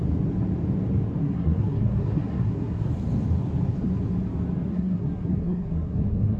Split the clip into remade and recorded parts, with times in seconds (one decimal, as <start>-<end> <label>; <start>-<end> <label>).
0.0-1.2 recorded; 1.2-2.9 remade; 2.9-4.7 recorded; 4.7-6.4 remade